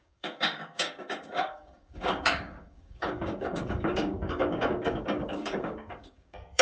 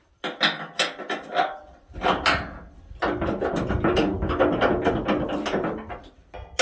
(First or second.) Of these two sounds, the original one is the second